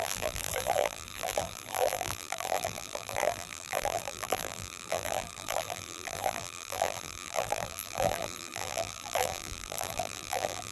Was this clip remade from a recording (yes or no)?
yes